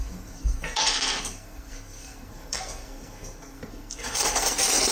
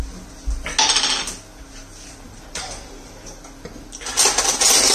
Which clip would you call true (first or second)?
second